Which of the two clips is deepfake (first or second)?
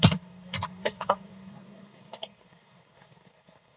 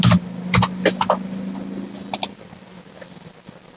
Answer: first